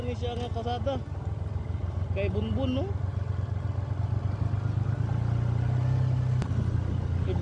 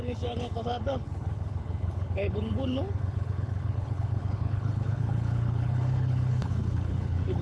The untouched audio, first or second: first